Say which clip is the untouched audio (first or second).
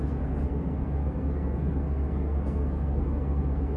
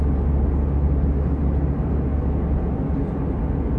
second